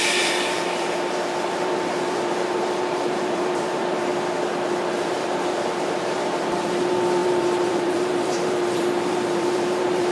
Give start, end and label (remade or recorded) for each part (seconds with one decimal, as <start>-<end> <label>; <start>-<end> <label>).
0.0-4.1 remade; 4.1-4.9 recorded; 4.9-10.1 remade